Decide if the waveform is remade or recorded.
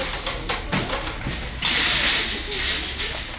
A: recorded